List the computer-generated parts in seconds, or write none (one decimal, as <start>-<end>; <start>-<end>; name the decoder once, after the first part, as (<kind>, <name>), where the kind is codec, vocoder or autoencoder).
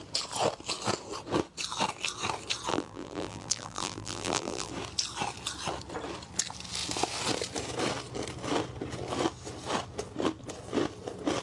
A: 2.7-4.7 (vocoder, BigVGAN v2)